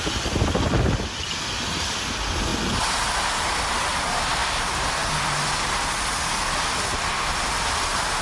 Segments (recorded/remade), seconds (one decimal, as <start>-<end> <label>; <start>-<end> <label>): 0.0-8.2 recorded